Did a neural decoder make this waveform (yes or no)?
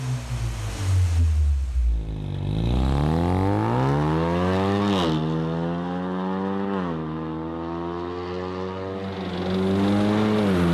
no